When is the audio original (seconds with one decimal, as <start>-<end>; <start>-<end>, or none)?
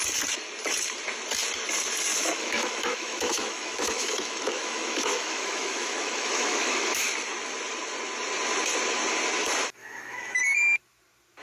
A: 0.0-2.1; 7.1-9.8; 10.4-11.4